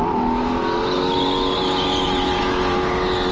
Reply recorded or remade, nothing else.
recorded